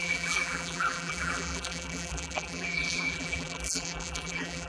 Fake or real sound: fake